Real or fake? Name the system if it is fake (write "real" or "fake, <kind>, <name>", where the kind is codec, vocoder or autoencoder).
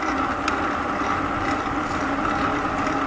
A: real